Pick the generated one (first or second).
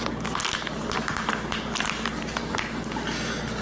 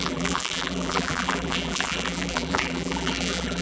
second